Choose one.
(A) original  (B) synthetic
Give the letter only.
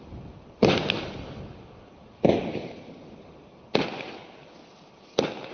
A